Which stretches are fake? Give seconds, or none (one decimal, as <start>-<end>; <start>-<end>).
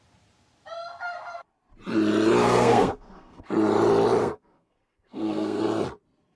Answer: 2.4-3.5; 4.2-5.6